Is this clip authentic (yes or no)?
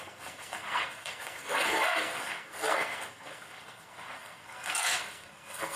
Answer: no